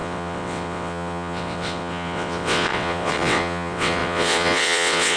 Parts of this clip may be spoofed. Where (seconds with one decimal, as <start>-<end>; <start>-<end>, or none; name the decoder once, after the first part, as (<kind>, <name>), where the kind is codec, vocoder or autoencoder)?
0.0-5.2 (vocoder, WaveNeXt)